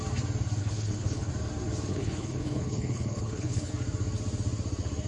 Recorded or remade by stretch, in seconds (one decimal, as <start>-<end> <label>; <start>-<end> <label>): 0.0-0.6 recorded; 0.6-1.3 remade; 1.3-1.9 recorded; 1.9-3.7 remade; 3.7-5.1 recorded